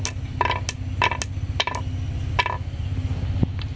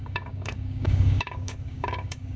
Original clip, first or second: first